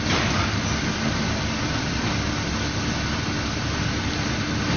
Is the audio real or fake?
real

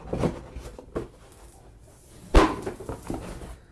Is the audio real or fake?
real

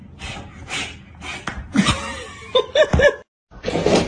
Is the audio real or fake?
real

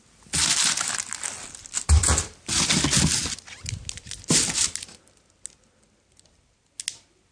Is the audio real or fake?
real